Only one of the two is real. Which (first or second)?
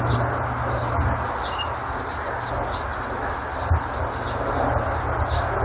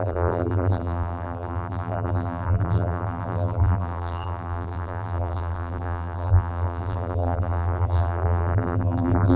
first